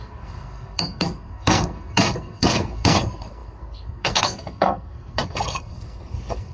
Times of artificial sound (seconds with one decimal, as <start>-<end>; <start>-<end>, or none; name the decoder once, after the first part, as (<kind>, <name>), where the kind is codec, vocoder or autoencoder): 0.0-6.5 (codec, SNAC)